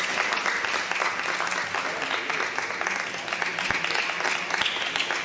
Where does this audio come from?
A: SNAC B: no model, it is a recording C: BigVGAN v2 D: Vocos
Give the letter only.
B